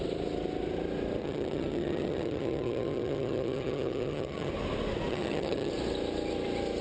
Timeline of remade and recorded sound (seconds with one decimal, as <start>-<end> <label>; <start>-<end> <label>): 0.0-1.2 recorded; 1.2-4.5 remade; 4.5-5.1 recorded; 5.1-5.7 remade; 5.7-6.8 recorded